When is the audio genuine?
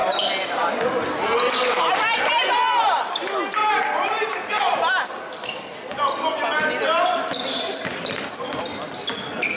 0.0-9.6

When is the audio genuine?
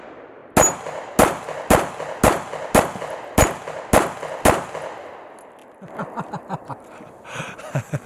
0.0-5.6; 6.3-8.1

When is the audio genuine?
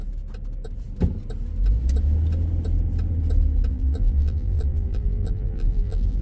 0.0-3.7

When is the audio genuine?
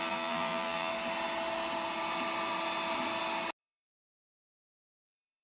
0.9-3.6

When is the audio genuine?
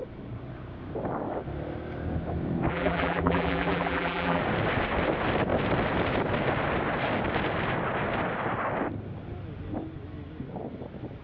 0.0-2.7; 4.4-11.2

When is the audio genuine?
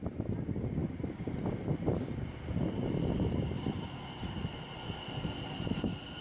0.0-6.2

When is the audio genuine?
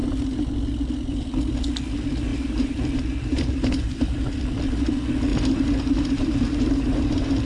0.0-2.3; 2.9-3.3; 4.3-5.3